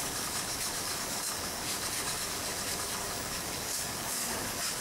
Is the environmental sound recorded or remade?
remade